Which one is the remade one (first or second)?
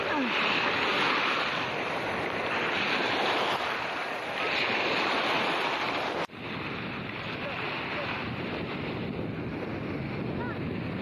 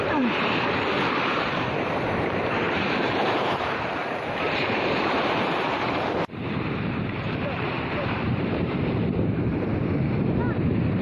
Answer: second